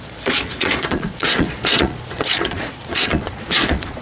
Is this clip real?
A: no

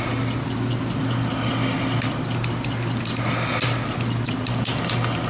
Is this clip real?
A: yes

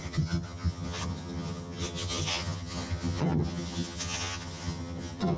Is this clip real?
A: no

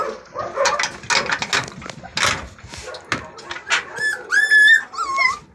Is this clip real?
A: yes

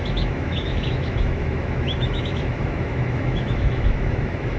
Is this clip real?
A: no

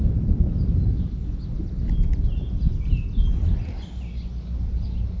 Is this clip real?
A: yes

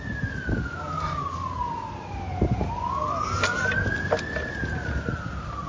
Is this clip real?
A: yes